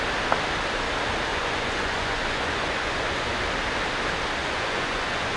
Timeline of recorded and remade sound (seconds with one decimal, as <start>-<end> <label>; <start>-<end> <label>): 0.0-1.3 recorded; 1.3-3.4 remade; 3.4-4.4 recorded; 4.4-5.4 remade